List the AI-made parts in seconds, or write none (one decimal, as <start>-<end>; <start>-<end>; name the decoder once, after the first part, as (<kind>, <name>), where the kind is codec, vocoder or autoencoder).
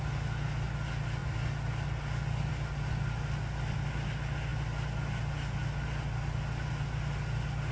none